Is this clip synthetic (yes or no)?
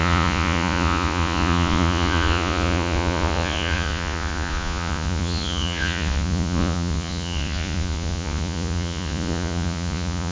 yes